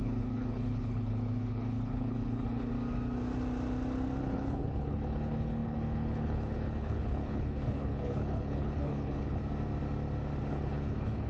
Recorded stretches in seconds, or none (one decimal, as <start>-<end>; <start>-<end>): 2.7-4.2; 9.4-10.5